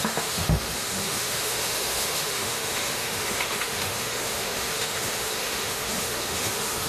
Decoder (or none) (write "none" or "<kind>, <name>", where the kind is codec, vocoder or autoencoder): autoencoder, DAC-VAE